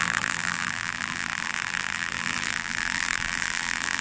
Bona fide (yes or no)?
no